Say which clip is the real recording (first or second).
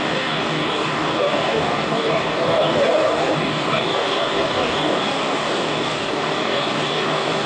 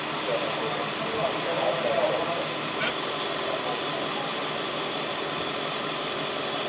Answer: second